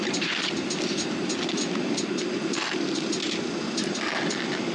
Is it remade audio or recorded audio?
recorded